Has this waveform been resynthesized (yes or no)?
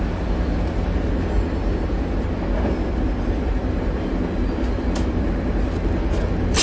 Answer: no